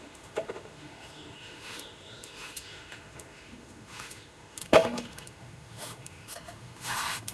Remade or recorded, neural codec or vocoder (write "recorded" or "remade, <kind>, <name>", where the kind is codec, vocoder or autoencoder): remade, autoencoder, DAC-VAE